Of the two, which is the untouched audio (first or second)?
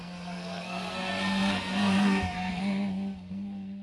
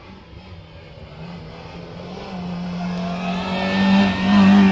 second